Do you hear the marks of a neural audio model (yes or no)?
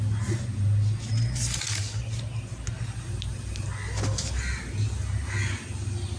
no